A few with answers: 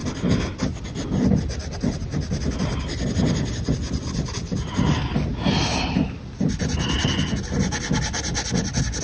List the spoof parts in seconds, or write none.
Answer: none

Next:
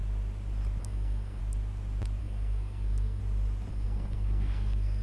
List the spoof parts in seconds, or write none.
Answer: 0.8-1.4 (codec, SNAC); 2.2-3.2; 3.7-5.0

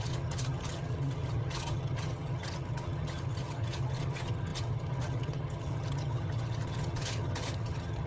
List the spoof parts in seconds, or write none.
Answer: 0.0-8.1 (vocoder, HiFi-GAN)